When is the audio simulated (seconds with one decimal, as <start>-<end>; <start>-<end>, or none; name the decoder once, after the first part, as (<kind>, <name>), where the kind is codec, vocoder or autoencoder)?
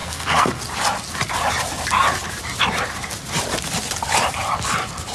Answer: 0.0-0.6 (codec, SNAC)